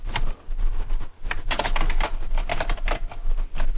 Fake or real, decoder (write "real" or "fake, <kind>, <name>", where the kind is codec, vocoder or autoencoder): real